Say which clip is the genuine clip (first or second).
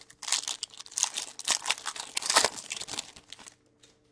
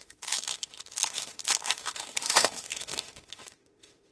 first